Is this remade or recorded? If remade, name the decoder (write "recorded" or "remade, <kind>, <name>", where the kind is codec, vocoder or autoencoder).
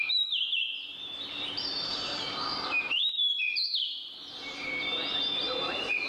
remade, vocoder, BigVGAN v2